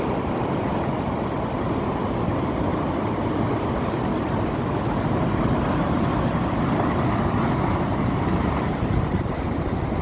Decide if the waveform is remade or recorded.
recorded